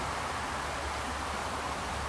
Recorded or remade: recorded